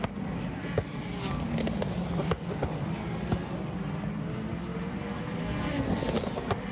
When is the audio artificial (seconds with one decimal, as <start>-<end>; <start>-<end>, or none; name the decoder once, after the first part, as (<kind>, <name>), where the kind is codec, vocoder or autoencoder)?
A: none